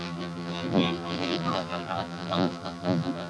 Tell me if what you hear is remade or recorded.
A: remade